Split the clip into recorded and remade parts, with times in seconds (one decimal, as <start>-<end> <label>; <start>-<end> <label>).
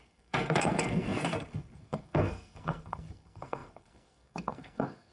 0.0-5.1 remade